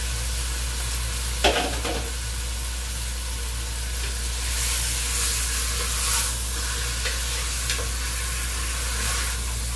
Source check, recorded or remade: recorded